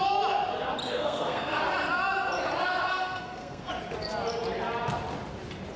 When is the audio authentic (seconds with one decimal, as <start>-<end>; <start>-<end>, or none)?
0.0-0.8; 1.6-2.9; 3.7-5.8